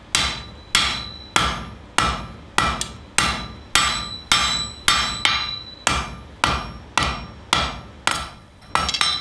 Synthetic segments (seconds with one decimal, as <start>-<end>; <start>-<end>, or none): 8.1-8.7